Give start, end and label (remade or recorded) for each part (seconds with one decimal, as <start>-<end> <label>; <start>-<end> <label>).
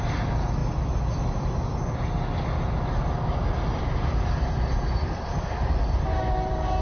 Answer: 0.0-0.6 remade; 0.6-3.8 recorded; 3.8-6.8 remade